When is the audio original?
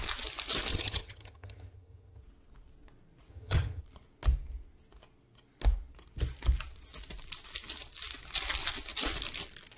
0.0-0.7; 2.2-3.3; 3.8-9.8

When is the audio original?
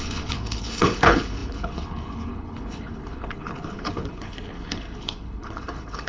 none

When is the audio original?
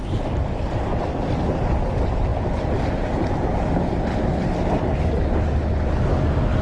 0.0-6.6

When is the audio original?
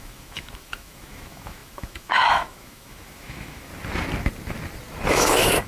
3.7-5.1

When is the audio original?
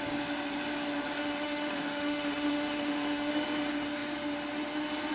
0.0-1.2; 3.3-5.1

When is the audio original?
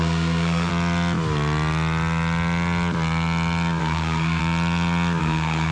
0.7-3.8; 4.4-5.2